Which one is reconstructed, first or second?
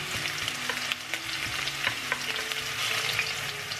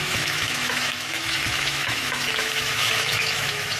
second